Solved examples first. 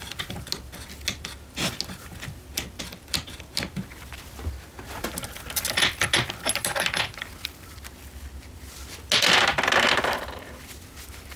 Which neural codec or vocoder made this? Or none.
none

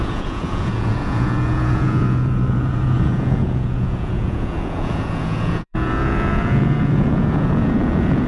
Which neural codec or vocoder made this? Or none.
vocoder, Vocos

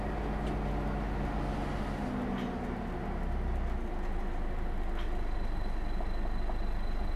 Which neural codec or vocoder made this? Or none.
none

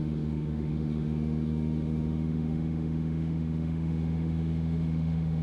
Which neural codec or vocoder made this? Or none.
autoencoder, DAC-VAE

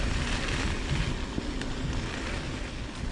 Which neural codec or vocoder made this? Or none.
none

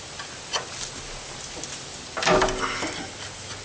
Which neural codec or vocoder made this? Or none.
none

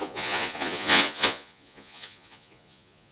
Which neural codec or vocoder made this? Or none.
vocoder, Vocos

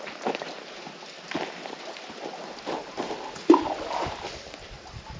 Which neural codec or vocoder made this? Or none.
none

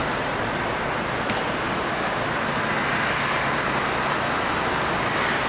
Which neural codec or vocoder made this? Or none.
none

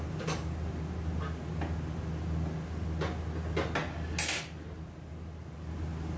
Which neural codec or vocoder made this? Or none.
none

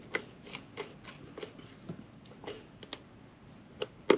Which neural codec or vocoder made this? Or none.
none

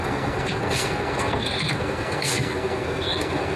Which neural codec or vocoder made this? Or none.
codec, SNAC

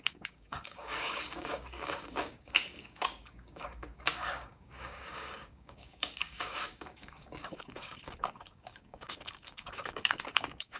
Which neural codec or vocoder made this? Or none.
codec, DAC